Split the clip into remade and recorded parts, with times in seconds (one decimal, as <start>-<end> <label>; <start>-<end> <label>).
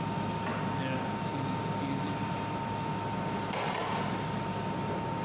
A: 0.0-5.2 recorded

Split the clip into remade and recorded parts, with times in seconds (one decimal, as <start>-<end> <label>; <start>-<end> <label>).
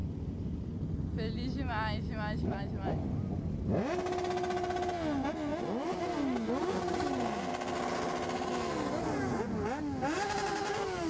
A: 0.0-11.1 recorded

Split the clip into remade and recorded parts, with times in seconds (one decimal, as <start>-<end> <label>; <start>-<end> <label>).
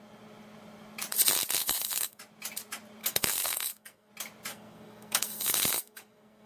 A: 0.0-1.6 recorded; 1.6-2.2 remade; 2.2-3.0 recorded; 3.0-4.1 remade; 4.1-4.5 recorded; 4.5-6.5 remade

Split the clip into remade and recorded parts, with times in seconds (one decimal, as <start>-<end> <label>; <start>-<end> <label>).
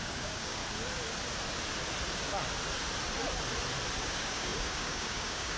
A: 0.0-0.6 remade; 0.6-4.0 recorded; 4.0-5.6 remade